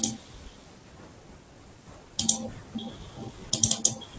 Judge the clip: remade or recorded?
recorded